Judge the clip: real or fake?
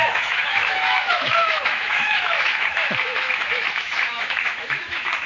fake